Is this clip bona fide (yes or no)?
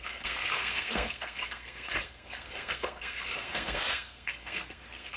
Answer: no